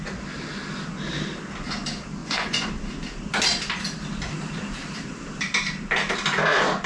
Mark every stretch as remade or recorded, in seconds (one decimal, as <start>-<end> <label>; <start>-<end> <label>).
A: 0.0-2.2 recorded; 2.2-2.7 remade; 2.7-6.9 recorded